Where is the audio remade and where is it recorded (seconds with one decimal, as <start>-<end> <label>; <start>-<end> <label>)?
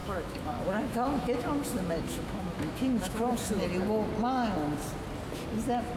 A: 0.0-3.6 remade; 3.6-6.0 recorded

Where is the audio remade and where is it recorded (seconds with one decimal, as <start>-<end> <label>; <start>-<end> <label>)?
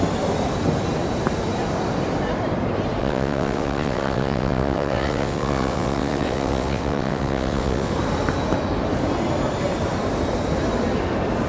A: 0.0-3.0 recorded; 3.0-7.9 remade; 7.9-11.5 recorded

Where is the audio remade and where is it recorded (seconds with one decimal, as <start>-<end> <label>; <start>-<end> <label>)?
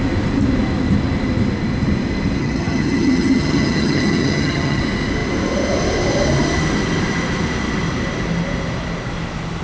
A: 0.0-2.4 recorded; 2.4-4.8 remade; 4.8-9.6 recorded